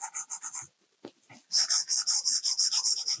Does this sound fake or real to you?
real